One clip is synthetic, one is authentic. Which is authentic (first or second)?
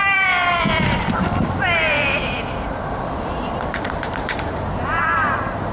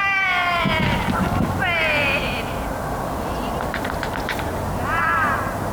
second